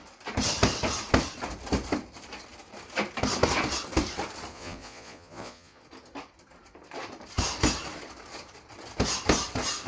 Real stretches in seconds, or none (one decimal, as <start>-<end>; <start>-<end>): 0.0-4.5; 5.8-9.9